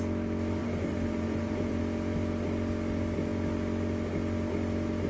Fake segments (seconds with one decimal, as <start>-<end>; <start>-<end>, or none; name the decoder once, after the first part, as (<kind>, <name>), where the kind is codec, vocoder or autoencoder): 0.6-1.8 (vocoder, BigVGAN v2)